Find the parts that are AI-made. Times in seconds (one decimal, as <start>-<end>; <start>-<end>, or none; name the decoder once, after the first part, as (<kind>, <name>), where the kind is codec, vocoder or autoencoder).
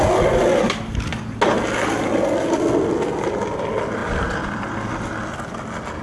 none